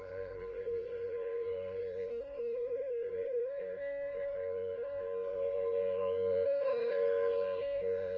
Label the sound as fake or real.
fake